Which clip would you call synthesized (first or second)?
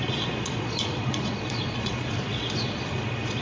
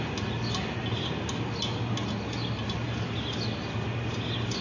first